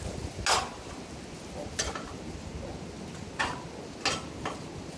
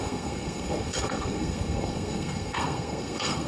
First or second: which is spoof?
second